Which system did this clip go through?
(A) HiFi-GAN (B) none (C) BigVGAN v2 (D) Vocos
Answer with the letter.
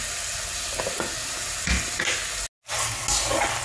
B